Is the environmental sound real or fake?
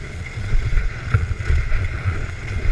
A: fake